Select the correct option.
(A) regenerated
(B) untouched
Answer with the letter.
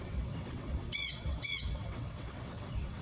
A